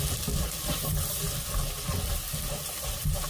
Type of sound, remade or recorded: recorded